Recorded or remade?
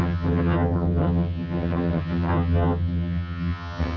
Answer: remade